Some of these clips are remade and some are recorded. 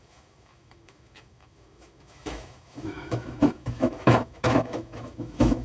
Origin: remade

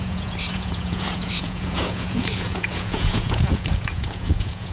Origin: remade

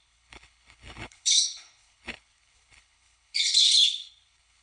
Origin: remade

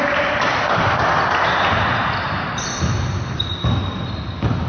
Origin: recorded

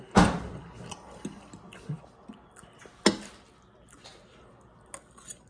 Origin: recorded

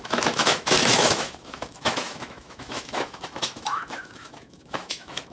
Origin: remade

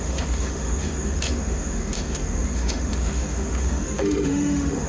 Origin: remade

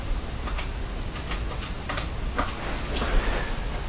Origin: recorded